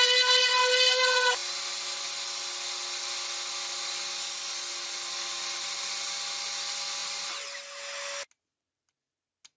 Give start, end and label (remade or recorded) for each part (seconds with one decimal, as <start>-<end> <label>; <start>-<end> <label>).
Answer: 0.0-9.6 recorded